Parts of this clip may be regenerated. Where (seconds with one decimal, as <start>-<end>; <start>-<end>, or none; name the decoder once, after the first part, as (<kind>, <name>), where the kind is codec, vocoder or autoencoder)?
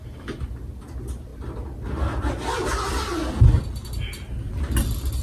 none